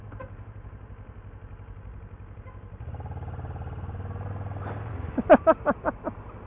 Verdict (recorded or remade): recorded